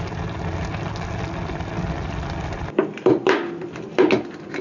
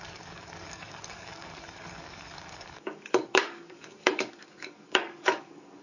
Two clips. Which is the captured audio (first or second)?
first